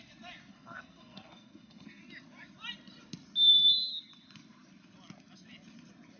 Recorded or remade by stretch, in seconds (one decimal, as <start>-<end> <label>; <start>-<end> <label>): 0.0-0.5 recorded; 0.5-2.0 remade; 2.0-6.2 recorded